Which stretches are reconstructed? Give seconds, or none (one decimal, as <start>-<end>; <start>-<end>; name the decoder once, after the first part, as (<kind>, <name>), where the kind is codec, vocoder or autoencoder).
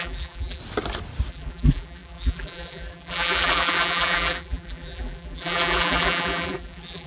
0.0-0.6 (vocoder, BigVGAN v2); 1.3-7.1